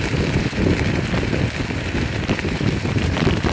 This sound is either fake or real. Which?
fake